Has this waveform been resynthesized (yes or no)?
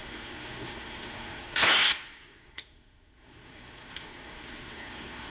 yes